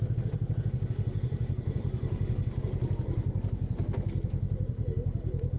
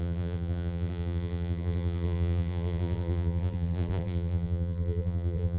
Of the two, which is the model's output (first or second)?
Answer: second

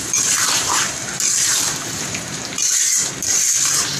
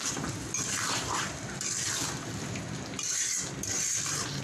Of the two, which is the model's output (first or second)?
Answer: first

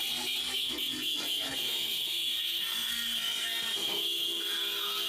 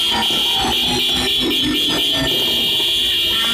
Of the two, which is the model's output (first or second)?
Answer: first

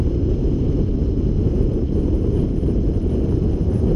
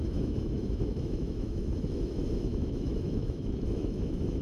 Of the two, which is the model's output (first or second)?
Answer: second